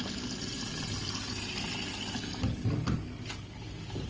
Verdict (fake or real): real